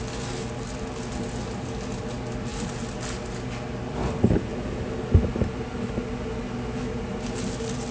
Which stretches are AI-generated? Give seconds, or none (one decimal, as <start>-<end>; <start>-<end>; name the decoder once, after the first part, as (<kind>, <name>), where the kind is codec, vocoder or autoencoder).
none